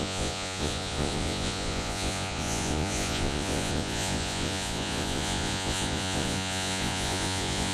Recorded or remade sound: remade